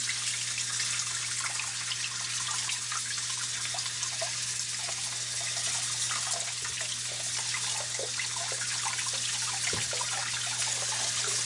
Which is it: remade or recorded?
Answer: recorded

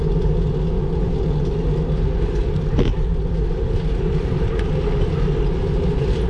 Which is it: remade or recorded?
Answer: recorded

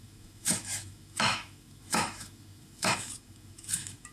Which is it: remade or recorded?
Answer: remade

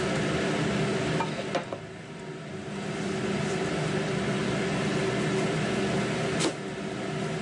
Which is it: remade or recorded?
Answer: recorded